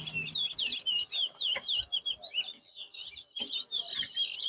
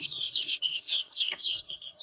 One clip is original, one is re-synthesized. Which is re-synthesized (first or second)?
second